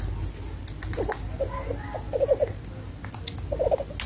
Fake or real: real